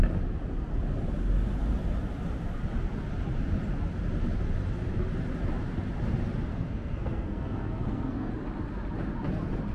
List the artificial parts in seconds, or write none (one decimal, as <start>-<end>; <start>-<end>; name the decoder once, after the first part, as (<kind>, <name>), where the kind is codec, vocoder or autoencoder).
6.5-8.3 (codec, SNAC)